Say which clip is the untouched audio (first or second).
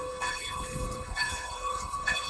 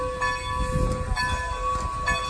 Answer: second